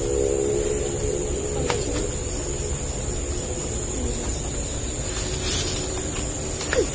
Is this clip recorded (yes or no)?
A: yes